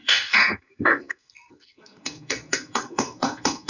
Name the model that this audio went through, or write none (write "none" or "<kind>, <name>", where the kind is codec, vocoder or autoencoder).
codec, SNAC